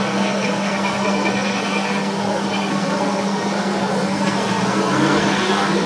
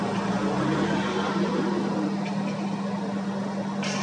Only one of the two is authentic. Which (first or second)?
second